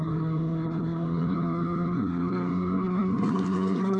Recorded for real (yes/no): no